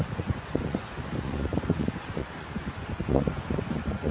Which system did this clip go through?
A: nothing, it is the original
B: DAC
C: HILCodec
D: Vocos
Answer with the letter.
D